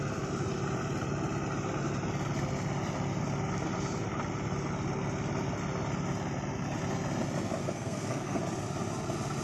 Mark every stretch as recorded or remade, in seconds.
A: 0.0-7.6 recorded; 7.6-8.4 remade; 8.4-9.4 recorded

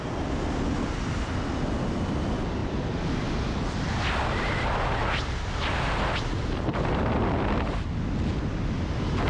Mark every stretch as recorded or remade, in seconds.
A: 0.0-9.3 recorded

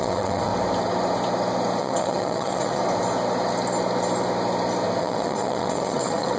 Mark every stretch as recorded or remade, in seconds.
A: 0.0-0.5 remade; 0.5-1.8 recorded; 1.8-2.8 remade; 2.8-5.0 recorded; 5.0-6.4 remade

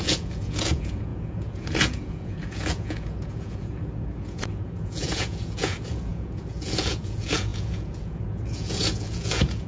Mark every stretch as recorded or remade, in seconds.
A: 0.0-9.7 remade

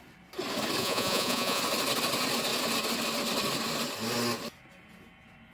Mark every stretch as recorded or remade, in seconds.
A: 0.0-0.8 recorded; 0.8-1.6 remade; 1.6-5.5 recorded

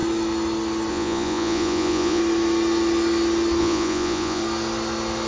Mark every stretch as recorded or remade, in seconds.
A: 0.0-0.9 recorded; 0.9-2.2 remade; 2.2-3.6 recorded; 3.6-4.4 remade; 4.4-5.3 recorded

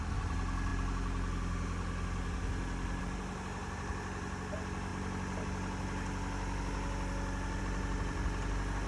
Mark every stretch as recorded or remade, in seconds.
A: 0.0-8.9 recorded

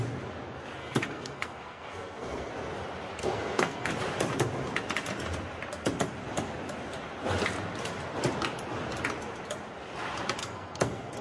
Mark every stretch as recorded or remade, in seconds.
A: 0.0-0.8 recorded; 0.8-2.5 remade; 2.5-3.2 recorded; 3.2-3.9 remade; 3.9-10.4 recorded; 10.4-11.2 remade